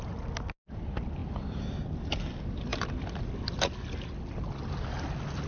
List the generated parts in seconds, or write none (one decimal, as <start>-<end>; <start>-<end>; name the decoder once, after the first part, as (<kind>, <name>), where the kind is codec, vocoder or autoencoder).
none